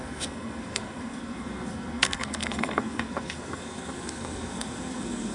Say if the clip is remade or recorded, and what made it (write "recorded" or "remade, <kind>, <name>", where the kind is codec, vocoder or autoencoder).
remade, codec, SNAC